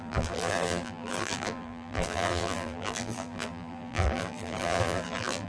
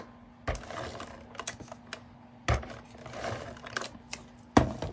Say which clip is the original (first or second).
second